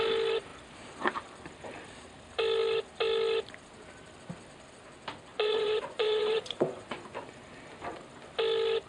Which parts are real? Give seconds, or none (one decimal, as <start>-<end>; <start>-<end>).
0.0-5.3; 7.2-8.9